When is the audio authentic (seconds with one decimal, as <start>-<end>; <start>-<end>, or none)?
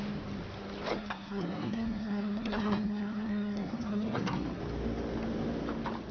0.0-0.9; 4.6-6.1